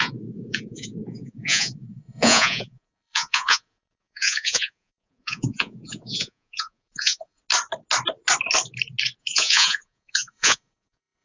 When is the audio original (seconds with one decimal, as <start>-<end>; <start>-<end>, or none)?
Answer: 7.4-9.2